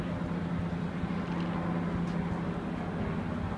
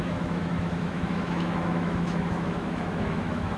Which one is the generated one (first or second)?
second